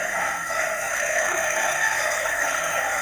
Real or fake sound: fake